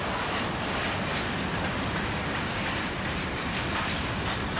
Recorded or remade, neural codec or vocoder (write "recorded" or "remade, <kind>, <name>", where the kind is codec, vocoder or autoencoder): remade, vocoder, BigVGAN v2